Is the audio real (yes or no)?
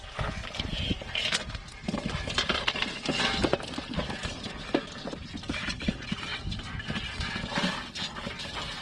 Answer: yes